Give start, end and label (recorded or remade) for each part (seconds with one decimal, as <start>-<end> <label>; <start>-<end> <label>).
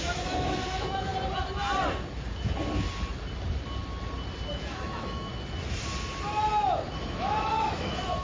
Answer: 0.0-1.1 remade; 1.1-4.5 recorded; 4.5-5.3 remade; 5.3-7.0 recorded; 7.0-8.2 remade